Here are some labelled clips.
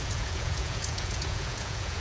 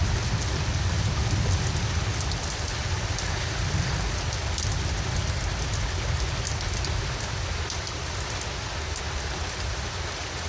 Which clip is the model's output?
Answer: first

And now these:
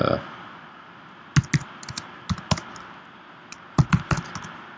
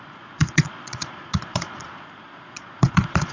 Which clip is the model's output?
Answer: second